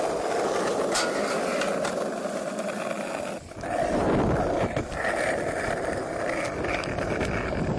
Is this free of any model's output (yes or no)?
yes